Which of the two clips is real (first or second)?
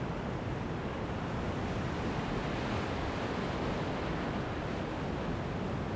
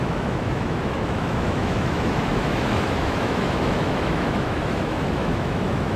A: first